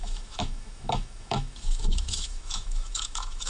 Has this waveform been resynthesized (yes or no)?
yes